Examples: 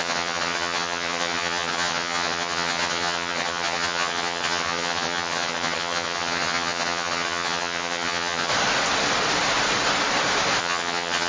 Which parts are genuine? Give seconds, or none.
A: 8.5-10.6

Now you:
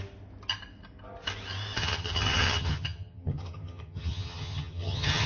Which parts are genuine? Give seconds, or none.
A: 0.0-1.8

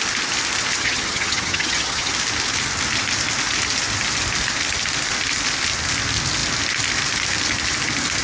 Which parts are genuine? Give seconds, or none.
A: 0.0-0.8; 2.1-8.2

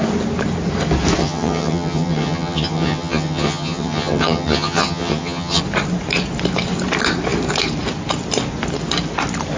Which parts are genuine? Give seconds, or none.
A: 0.0-1.2; 5.6-9.6

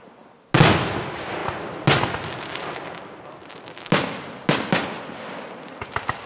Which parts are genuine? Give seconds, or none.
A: 0.0-6.3

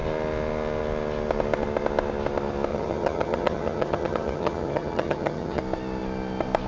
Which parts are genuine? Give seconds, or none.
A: 0.0-2.7; 5.6-6.7

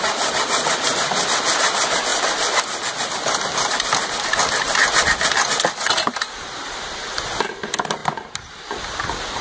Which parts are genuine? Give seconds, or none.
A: 0.0-9.4